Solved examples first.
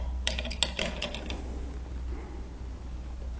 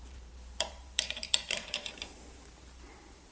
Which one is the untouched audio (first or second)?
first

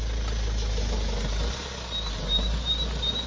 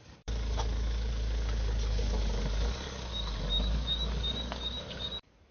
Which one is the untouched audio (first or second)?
first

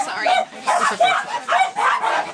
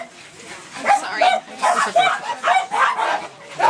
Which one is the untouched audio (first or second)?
second